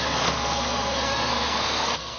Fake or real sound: fake